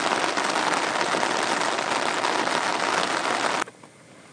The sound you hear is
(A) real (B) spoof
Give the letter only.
A